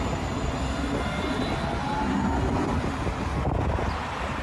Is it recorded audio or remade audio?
recorded